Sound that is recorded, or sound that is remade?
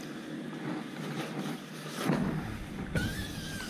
recorded